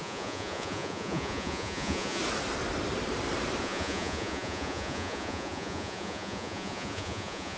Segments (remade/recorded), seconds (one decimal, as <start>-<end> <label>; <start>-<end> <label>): 0.0-2.2 remade; 2.2-3.6 recorded; 3.6-7.6 remade